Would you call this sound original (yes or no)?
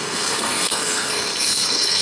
no